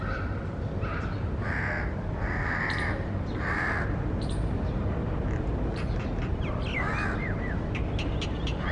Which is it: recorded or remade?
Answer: recorded